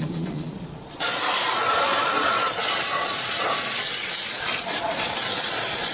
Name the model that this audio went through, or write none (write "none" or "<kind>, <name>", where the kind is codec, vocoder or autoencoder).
vocoder, Vocos